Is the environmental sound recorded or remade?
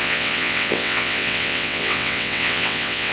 remade